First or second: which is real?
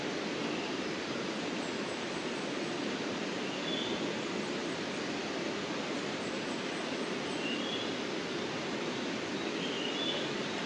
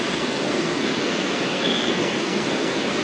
first